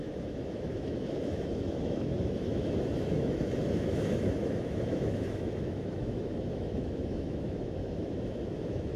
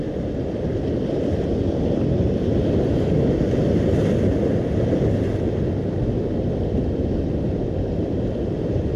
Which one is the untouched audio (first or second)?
second